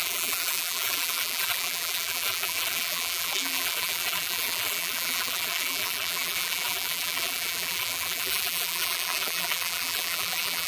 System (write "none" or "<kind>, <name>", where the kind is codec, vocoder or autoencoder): vocoder, BigVGAN v2